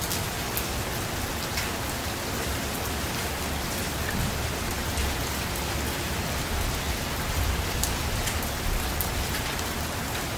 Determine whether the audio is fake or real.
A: real